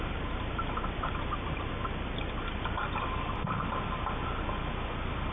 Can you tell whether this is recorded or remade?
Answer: recorded